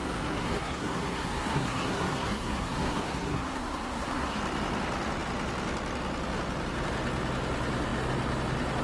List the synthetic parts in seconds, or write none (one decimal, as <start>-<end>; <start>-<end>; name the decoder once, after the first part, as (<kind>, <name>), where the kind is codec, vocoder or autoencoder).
0.0-4.4 (codec, SNAC)